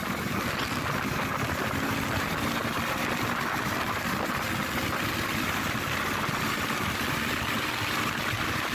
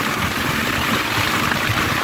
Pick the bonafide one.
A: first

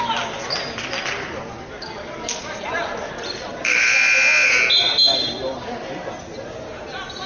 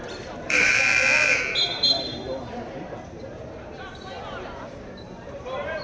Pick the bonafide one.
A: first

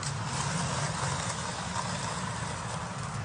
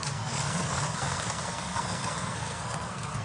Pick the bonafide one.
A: first